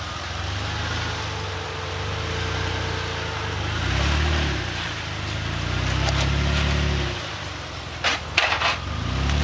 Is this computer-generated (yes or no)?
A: no